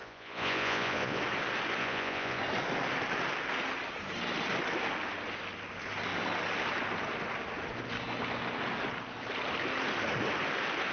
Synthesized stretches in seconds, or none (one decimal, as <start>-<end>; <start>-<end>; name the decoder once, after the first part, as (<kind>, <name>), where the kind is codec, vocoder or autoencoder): 0.0-1.2 (vocoder, Vocos); 1.8-2.4